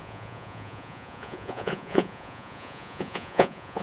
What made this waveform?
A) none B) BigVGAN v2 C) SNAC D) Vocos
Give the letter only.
D